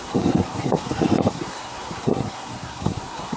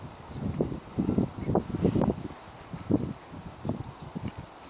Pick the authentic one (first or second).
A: second